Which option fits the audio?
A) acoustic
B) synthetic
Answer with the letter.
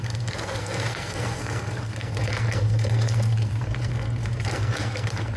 B